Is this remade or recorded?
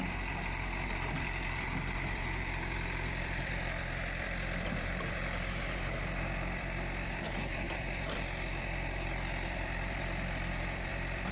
remade